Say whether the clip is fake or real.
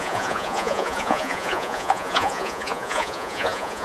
fake